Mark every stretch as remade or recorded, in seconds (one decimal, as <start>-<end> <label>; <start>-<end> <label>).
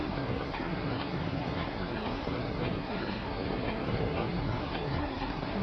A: 0.0-5.6 remade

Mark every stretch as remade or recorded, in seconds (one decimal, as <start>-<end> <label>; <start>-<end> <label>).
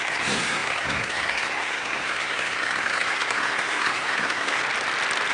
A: 0.0-4.6 remade; 4.6-5.3 recorded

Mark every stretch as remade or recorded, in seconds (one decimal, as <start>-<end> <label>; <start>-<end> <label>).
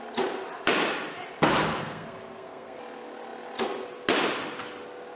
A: 0.0-1.8 recorded; 1.8-2.8 remade; 2.8-5.2 recorded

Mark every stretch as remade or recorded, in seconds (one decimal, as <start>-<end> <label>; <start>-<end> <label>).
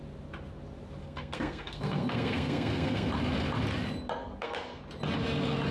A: 0.0-1.0 recorded; 1.0-3.1 remade; 3.1-4.2 recorded; 4.2-4.8 remade; 4.8-5.7 recorded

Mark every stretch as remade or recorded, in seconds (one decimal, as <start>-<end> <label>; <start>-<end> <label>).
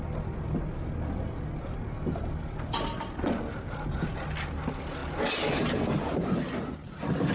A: 0.0-7.3 recorded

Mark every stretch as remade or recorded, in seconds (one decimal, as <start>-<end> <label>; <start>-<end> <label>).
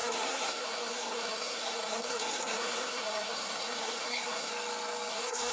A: 0.0-4.5 remade; 4.5-5.1 recorded; 5.1-5.5 remade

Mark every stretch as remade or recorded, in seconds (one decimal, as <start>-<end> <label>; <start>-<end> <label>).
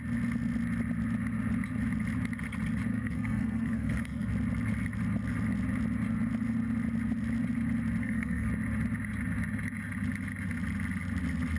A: 0.0-2.9 recorded; 2.9-4.3 remade; 4.3-8.0 recorded; 8.0-8.5 remade; 8.5-11.6 recorded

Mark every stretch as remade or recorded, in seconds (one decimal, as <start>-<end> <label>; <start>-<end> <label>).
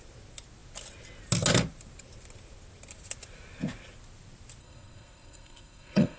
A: 0.0-4.6 recorded; 4.6-6.2 remade